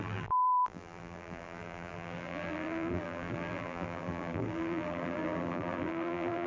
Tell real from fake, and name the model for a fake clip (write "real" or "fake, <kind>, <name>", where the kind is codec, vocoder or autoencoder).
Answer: fake, vocoder, BigVGAN v2